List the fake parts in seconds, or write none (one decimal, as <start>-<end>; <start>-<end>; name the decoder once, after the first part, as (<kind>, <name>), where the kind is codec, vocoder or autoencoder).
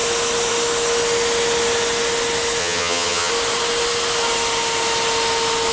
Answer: 2.6-3.3 (vocoder, HiFi-GAN)